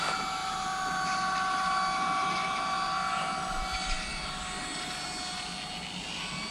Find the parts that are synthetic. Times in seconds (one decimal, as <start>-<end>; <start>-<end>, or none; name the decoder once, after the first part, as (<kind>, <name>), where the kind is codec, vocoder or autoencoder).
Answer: 0.4-1.7 (vocoder, BigVGAN v2)